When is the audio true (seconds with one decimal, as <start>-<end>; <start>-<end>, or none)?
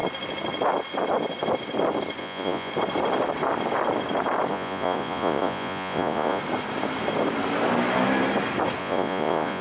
0.0-2.2; 2.7-4.5; 6.4-8.8